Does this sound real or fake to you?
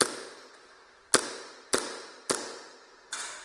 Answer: real